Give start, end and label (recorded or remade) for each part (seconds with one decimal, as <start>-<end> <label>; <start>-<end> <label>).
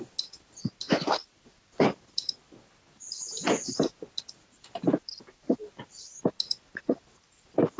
0.0-7.8 recorded